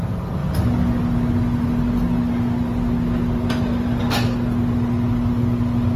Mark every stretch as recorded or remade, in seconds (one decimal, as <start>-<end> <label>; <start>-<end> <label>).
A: 0.0-6.0 recorded